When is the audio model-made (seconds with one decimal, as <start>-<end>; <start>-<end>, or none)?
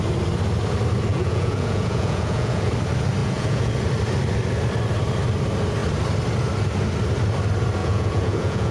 1.1-2.7; 3.2-3.7; 7.8-8.7